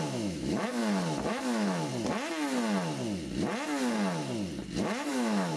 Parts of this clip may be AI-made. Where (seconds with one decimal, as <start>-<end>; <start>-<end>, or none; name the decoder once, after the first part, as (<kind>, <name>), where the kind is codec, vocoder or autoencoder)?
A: 0.0-0.8 (autoencoder, DAC-VAE); 1.3-1.9; 5.1-5.6